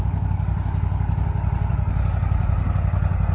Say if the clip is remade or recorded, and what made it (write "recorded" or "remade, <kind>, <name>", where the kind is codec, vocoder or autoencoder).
remade, codec, DAC